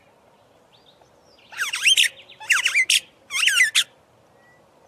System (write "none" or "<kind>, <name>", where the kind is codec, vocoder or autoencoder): none